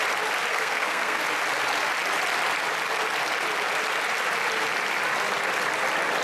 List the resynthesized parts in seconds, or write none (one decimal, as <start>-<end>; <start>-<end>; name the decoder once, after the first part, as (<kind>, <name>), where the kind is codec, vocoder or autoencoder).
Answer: 0.5-1.2 (codec, SNAC)